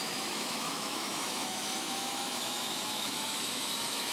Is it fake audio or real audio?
fake